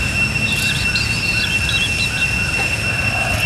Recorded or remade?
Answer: recorded